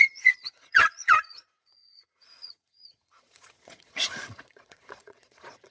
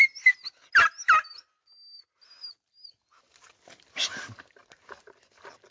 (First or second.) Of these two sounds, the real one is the second